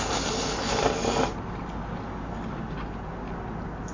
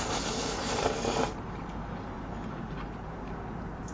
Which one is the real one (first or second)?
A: first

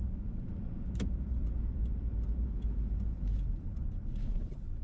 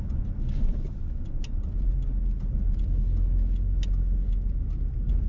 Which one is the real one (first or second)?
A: second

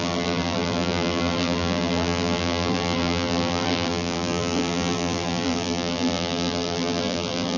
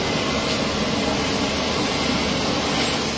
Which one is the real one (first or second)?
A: second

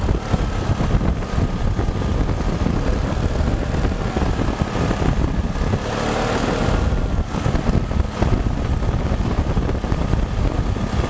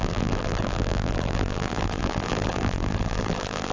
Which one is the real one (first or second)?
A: first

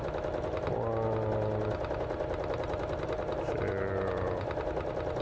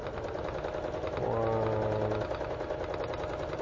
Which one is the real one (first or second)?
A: second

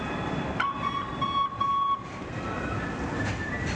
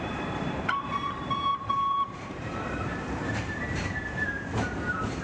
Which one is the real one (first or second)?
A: first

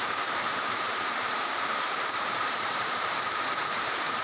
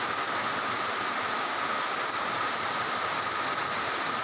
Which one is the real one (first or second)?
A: second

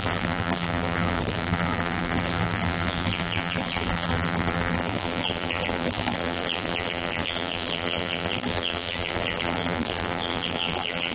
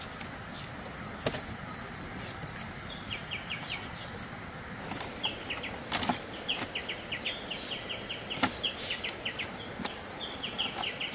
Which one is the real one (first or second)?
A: second